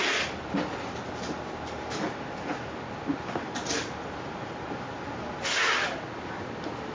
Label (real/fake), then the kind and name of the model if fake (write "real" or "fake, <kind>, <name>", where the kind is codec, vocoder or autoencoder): real